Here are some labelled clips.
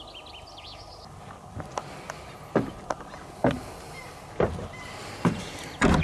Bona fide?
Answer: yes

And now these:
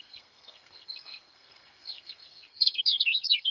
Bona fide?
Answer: no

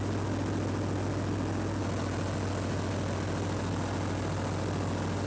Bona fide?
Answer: yes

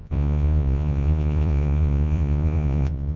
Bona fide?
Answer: no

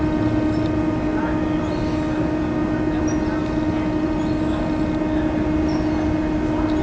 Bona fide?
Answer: yes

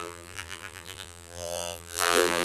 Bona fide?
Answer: no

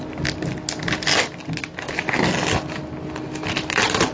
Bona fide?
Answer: yes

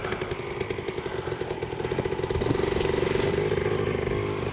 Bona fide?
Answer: yes